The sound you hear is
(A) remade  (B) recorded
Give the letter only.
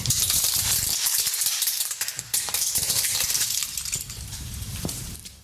A